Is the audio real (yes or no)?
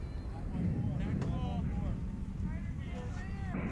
yes